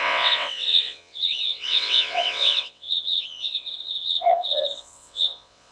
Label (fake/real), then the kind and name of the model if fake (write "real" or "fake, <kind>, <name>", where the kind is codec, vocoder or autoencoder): fake, vocoder, WaveNeXt